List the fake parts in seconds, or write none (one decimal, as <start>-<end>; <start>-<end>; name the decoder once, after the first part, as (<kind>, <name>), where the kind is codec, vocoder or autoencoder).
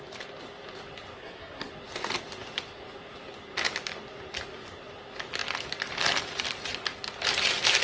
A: 1.2-1.7 (codec, SNAC)